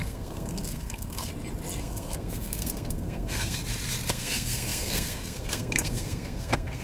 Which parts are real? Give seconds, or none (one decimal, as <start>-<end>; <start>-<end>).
1.3-1.8; 3.6-4.1